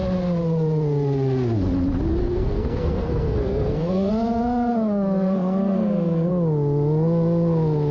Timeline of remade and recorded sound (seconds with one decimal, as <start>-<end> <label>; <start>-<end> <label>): 0.0-2.2 recorded; 2.2-4.1 remade; 4.1-4.7 recorded; 4.7-6.3 remade; 6.3-7.9 recorded